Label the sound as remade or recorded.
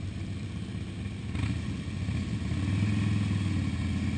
recorded